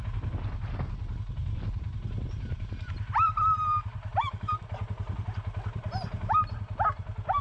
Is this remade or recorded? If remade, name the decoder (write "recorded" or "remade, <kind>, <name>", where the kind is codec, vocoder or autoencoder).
recorded